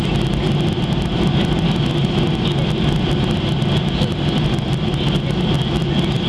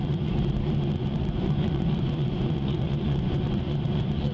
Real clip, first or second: first